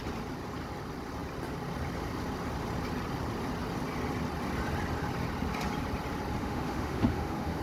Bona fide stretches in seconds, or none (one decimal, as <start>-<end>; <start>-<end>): 0.0-6.4